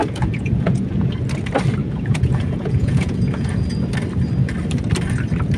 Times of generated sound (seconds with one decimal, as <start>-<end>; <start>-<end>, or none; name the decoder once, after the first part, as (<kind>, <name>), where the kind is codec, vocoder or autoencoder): 0.0-1.1 (vocoder, Vocos); 1.8-3.8